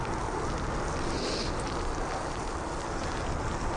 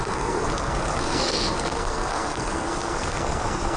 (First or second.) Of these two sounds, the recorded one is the first